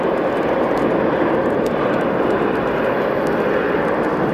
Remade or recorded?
recorded